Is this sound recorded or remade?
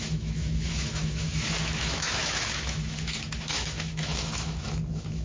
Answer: remade